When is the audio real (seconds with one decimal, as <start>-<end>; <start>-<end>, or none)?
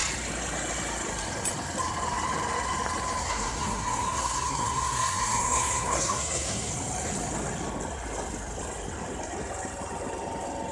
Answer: 0.0-3.2; 6.7-10.7